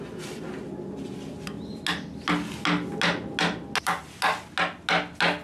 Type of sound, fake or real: real